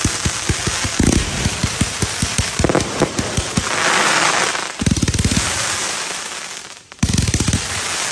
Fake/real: real